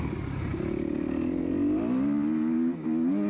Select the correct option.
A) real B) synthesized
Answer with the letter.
A